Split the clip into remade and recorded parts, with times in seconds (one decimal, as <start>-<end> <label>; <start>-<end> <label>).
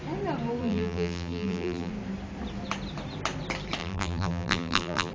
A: 0.0-0.6 recorded; 0.6-1.9 remade; 1.9-3.8 recorded; 3.8-5.1 remade